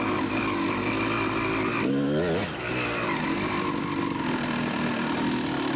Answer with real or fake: real